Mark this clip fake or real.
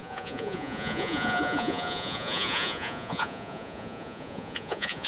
fake